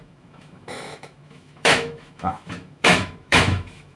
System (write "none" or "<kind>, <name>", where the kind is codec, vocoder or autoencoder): autoencoder, DAC-VAE